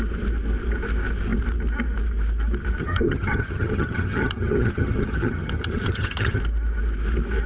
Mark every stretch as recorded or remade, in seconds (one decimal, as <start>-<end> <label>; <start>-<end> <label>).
0.0-2.8 recorded; 2.8-6.4 remade; 6.4-7.5 recorded

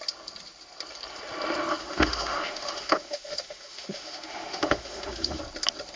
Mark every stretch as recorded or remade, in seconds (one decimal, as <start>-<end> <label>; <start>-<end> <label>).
0.0-1.8 recorded; 1.8-5.4 remade; 5.4-6.0 recorded

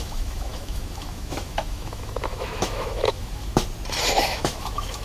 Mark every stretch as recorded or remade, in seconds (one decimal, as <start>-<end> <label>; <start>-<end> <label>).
0.0-3.5 remade; 3.5-4.2 recorded; 4.2-5.0 remade